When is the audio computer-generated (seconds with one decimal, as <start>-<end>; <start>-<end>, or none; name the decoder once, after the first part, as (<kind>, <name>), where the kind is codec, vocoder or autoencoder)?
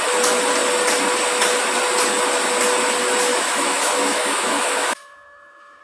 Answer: 3.3-5.8 (autoencoder, DAC-VAE)